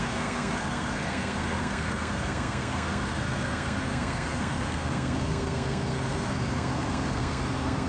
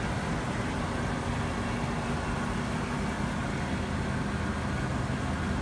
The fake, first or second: first